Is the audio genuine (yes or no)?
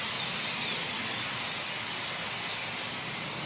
yes